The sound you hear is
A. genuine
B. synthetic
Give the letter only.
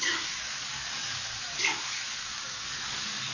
B